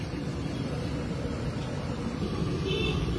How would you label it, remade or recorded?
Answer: remade